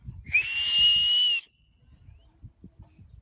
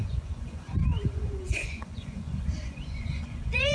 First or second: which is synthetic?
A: second